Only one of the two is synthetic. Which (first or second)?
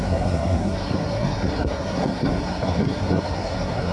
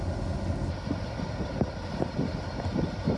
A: first